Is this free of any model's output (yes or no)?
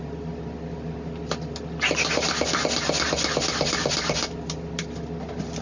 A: yes